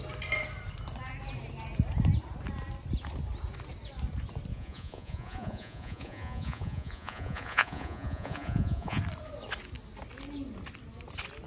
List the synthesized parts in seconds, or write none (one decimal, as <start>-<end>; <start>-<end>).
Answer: 4.5-9.0